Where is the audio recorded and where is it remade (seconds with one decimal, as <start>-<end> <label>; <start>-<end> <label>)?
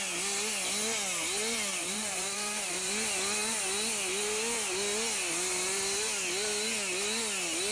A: 0.0-1.7 recorded; 1.7-2.9 remade; 2.9-7.7 recorded